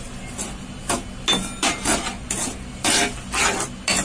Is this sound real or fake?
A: real